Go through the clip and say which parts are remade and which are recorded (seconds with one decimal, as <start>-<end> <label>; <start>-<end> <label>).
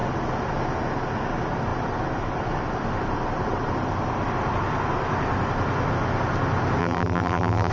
0.0-6.8 recorded; 6.8-7.7 remade